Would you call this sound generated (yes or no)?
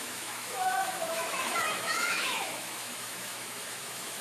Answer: yes